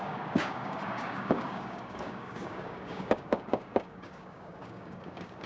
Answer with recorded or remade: remade